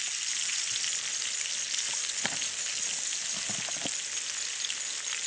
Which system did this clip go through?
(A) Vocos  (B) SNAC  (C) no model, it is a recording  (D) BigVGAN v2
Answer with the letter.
C